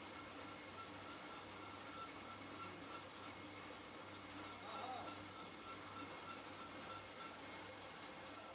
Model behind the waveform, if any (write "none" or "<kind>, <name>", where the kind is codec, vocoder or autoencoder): none